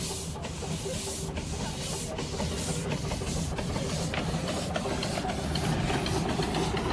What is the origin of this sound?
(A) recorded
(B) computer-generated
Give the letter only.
A